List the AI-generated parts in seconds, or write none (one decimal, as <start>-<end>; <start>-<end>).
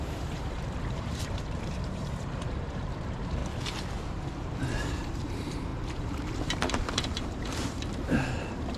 0.0-3.4; 4.9-8.8